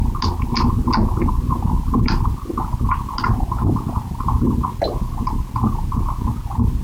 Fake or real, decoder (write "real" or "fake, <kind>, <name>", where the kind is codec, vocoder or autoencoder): real